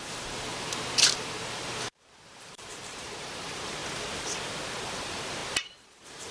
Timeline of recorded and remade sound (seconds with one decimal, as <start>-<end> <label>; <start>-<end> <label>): 0.0-3.8 remade; 3.8-4.9 recorded; 4.9-6.3 remade